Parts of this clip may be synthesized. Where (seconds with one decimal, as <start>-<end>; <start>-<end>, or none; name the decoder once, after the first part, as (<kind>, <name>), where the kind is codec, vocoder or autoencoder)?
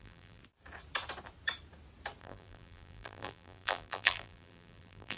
0.0-0.4 (vocoder, BigVGAN v2); 2.2-5.2